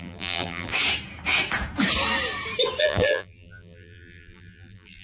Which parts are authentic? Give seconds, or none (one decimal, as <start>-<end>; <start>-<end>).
0.7-2.8